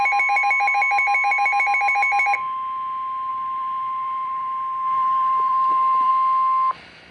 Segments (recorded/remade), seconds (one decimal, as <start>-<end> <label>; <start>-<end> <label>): 0.0-3.3 recorded; 3.3-6.1 remade; 6.1-7.1 recorded